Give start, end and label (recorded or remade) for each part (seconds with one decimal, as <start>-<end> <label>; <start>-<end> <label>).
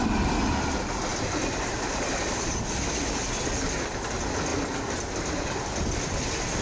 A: 0.0-6.6 recorded